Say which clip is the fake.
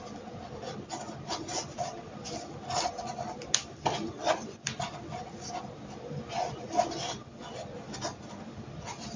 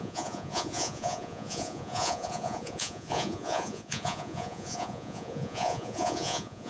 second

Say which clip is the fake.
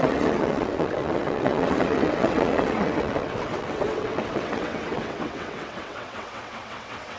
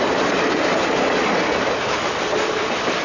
first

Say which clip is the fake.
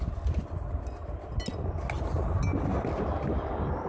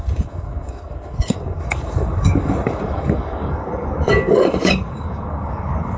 second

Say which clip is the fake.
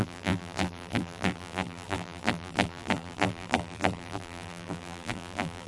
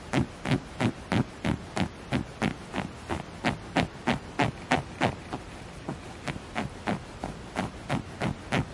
first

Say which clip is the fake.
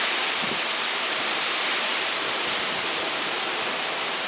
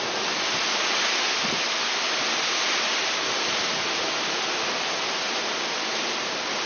first